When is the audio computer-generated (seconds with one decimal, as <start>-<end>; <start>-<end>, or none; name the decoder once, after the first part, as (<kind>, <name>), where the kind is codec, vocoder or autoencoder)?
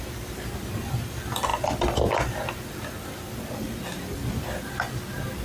none